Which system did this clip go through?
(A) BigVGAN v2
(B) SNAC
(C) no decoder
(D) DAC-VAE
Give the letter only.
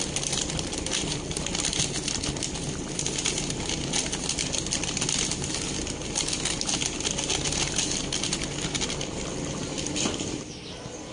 C